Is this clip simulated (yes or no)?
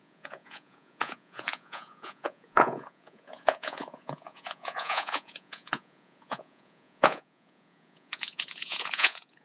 yes